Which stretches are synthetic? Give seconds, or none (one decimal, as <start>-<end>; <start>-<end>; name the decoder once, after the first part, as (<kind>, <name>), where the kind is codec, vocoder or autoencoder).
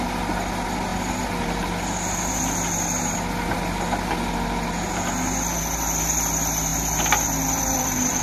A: 6.7-8.2 (vocoder, BigVGAN v2)